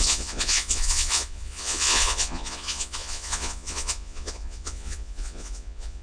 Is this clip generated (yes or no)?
yes